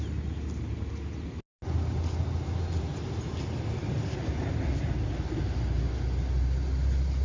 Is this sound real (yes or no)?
yes